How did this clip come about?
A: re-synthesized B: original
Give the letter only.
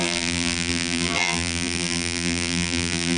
A